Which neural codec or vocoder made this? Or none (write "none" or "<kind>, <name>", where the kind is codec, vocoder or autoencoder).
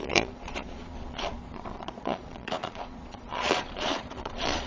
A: vocoder, Vocos